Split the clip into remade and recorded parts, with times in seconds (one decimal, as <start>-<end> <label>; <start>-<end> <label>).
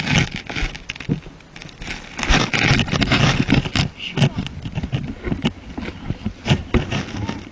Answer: 0.0-7.5 recorded